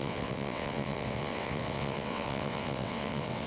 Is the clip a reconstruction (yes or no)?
yes